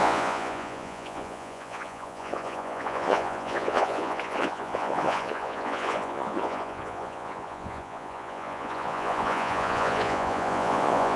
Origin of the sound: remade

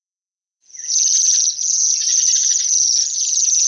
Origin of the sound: remade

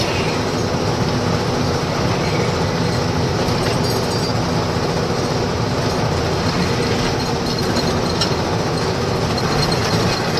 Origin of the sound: recorded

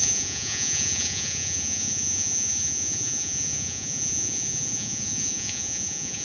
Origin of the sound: remade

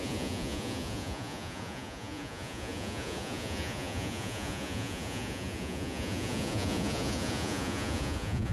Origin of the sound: remade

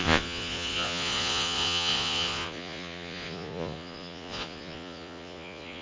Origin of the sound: remade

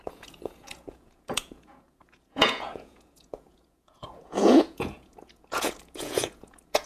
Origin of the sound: remade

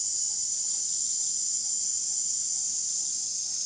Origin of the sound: recorded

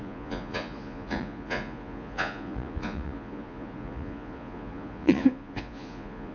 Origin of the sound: remade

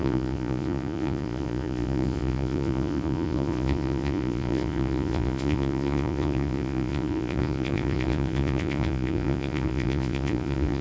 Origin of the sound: remade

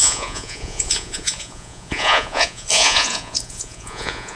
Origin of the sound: remade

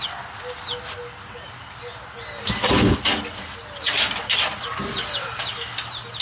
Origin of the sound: recorded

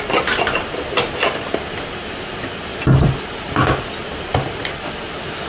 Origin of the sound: recorded